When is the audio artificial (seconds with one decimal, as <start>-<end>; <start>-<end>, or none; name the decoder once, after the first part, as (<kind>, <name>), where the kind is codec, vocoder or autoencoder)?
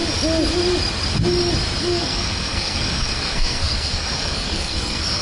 1.8-5.2 (codec, SNAC)